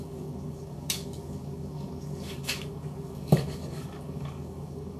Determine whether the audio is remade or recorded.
remade